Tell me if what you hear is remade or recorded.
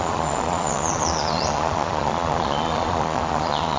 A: remade